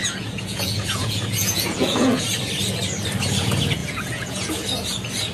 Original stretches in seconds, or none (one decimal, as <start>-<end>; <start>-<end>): 2.2-3.8; 4.5-5.3